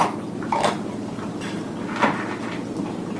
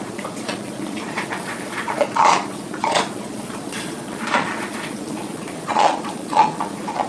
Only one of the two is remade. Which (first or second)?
second